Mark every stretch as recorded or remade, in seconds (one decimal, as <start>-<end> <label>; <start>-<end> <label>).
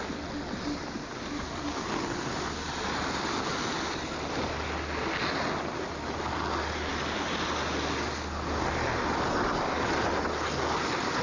0.0-11.2 recorded